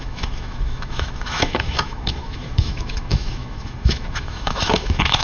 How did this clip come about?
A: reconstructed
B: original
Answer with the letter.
A